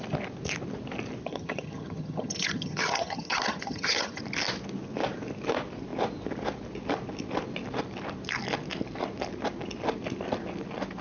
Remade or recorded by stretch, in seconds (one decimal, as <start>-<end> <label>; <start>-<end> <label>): 0.0-1.2 recorded; 1.2-4.2 remade; 4.2-11.0 recorded